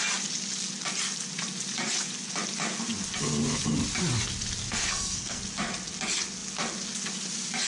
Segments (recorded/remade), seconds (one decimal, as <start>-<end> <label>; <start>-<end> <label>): 0.0-4.6 recorded; 4.6-5.4 remade; 5.4-7.7 recorded